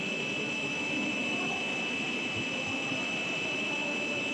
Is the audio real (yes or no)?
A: no